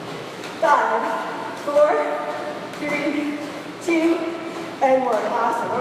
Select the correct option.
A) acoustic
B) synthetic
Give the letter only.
B